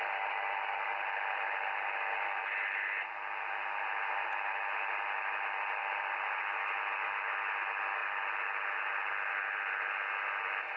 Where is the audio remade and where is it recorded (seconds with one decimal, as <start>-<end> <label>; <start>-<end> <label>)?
0.0-10.8 recorded